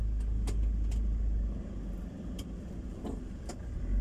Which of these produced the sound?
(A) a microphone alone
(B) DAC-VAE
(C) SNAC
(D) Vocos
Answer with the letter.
A